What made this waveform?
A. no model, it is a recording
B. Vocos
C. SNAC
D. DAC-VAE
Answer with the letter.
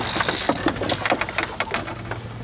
A